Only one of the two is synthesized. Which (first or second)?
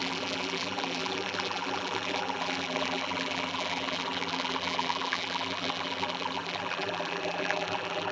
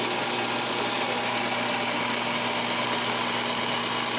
first